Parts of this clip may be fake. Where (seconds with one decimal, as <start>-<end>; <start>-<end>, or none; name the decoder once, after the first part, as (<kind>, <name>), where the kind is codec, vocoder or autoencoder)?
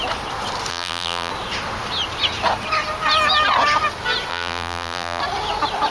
0.7-1.3 (vocoder, BigVGAN v2); 4.3-5.2